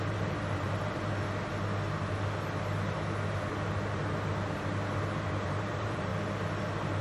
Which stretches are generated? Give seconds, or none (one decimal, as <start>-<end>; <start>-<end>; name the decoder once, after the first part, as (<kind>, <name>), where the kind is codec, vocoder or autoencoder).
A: 0.0-1.1 (vocoder, BigVGAN v2); 5.3-6.1